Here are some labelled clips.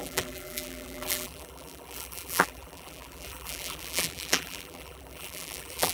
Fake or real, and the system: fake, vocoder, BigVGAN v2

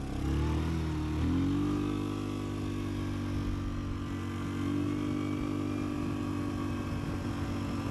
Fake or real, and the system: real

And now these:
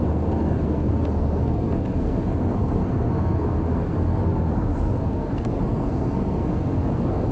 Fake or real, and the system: fake, codec, SNAC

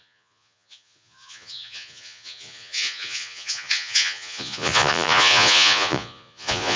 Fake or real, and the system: fake, vocoder, Vocos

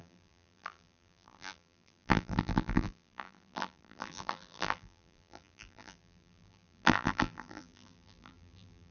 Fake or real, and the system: fake, vocoder, BigVGAN v2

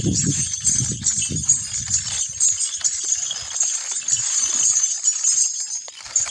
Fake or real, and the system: real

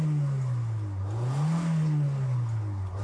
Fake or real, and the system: real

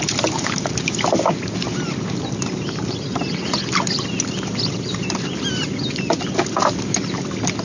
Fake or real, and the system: real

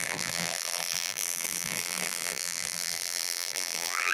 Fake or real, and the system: fake, vocoder, BigVGAN v2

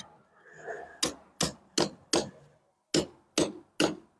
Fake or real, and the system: real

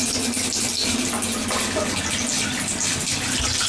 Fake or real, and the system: real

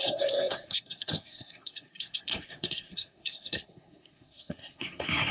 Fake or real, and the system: fake, codec, SNAC